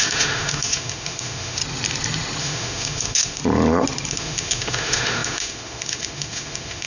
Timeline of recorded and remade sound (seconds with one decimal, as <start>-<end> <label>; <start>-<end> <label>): 0.0-1.6 remade; 1.6-2.4 recorded; 2.4-3.4 remade; 3.4-4.1 recorded; 4.1-6.9 remade